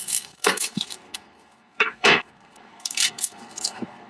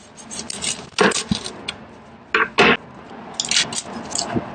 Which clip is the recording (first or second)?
second